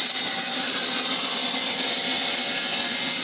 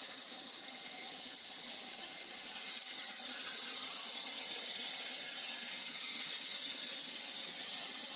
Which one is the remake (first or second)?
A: second